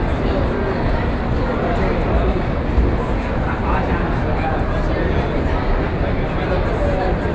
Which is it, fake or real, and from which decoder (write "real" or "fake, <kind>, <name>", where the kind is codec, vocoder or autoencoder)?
real